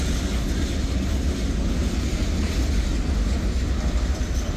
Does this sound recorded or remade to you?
recorded